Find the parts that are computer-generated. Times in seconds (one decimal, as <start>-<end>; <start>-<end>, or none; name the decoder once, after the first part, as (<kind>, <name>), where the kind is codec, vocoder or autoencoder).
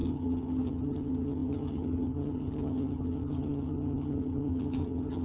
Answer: 0.0-5.2 (vocoder, HiFi-GAN)